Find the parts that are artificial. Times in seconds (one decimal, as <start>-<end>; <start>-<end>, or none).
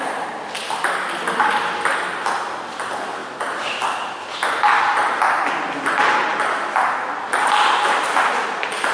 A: none